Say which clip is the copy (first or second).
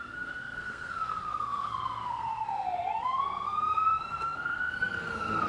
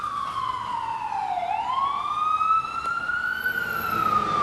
first